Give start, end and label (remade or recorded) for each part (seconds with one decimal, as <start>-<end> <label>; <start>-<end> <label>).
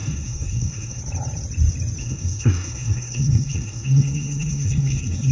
0.0-1.0 remade; 1.0-2.0 recorded; 2.0-5.3 remade